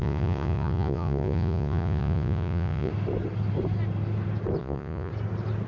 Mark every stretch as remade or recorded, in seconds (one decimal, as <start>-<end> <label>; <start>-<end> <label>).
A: 0.0-2.9 remade; 2.9-4.6 recorded; 4.6-5.1 remade; 5.1-5.7 recorded